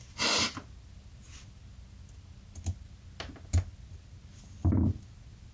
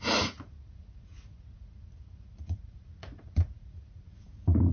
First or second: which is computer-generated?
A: second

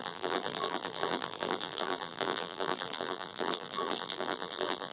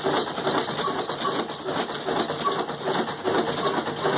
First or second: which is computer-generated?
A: first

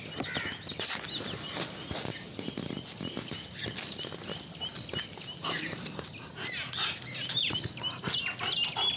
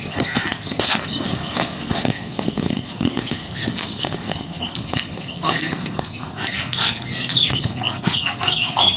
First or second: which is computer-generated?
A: second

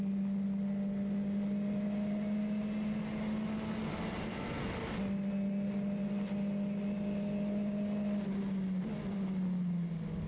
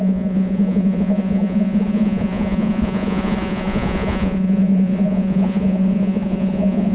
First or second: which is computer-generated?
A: second